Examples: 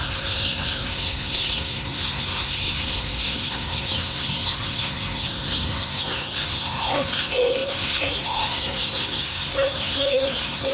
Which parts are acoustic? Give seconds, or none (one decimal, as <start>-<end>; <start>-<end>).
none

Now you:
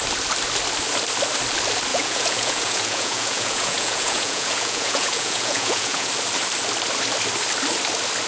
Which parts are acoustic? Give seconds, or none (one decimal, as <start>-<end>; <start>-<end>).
0.0-1.9; 6.1-8.3

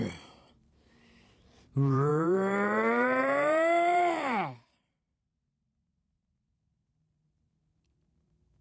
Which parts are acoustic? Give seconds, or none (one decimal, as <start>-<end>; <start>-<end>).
none

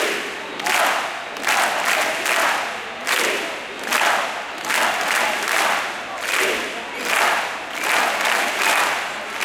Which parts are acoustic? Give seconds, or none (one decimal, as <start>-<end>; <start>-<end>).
0.0-9.4

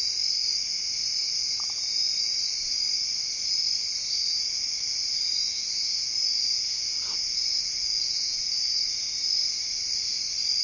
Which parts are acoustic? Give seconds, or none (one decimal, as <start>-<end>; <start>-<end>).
0.0-1.2; 2.3-5.4; 9.0-10.6

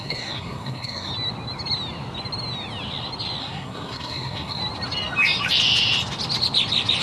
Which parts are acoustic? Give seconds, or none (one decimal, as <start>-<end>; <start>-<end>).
1.1-3.4; 4.6-7.0

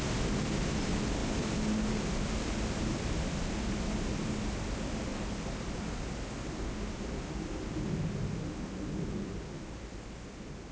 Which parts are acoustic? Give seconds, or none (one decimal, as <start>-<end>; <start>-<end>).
0.0-10.7

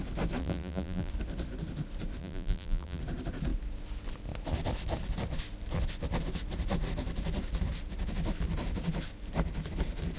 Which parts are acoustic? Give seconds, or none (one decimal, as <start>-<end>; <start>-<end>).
0.0-0.4; 1.1-2.2; 3.0-10.2